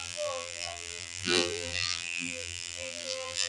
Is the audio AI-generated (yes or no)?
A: yes